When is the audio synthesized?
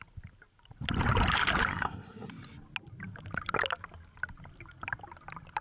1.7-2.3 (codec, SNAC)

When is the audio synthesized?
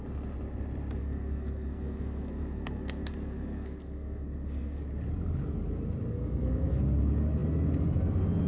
1.0-4.8 (codec, SNAC); 6.1-6.8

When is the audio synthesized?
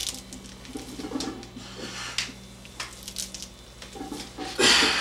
none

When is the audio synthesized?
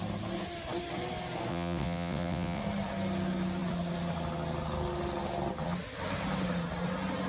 1.5-2.6 (vocoder, WaveNeXt)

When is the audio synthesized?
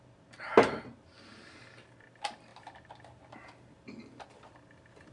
none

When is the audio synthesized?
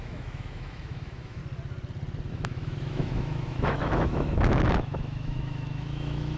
0.0-1.4 (autoencoder, DAC-VAE); 2.3-6.4